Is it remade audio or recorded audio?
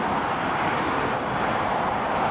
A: remade